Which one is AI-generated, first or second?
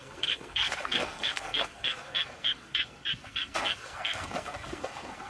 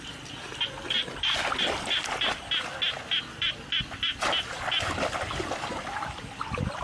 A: first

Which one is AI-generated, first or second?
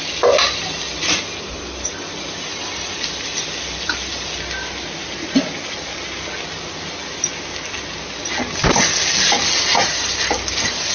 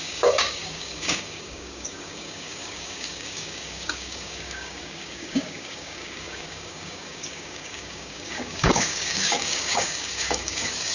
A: second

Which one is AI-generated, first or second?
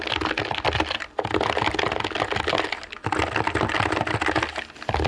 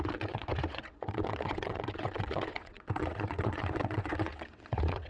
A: second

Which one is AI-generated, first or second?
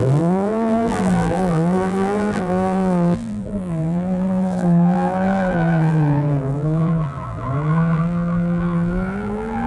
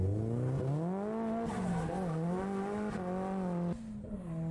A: first